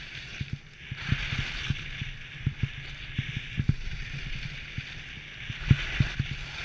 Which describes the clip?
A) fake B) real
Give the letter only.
B